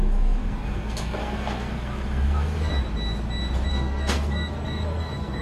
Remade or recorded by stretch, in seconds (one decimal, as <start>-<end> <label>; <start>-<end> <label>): 0.0-2.7 remade; 2.7-3.7 recorded; 3.7-5.4 remade